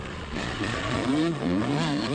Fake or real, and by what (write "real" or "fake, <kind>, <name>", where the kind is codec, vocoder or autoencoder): fake, vocoder, Vocos